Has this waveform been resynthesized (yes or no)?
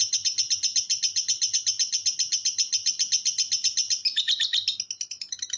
no